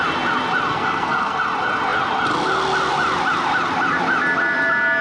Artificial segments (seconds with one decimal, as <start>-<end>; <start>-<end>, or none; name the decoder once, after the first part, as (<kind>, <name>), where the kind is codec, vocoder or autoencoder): 0.7-1.4 (codec, SNAC)